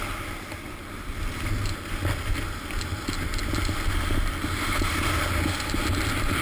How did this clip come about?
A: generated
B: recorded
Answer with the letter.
B